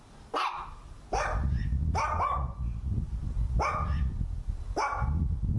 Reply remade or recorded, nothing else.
recorded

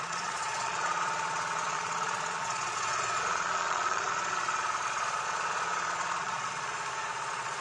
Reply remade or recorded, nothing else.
remade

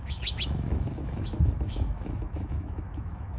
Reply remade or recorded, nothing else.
remade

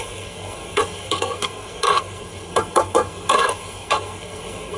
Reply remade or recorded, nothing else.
remade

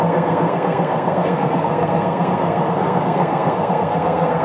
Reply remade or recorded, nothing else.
remade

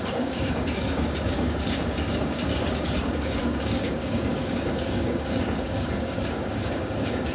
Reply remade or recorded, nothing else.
remade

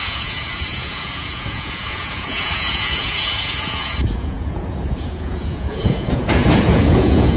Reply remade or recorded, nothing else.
remade